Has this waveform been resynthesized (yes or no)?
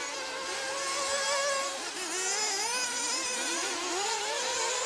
no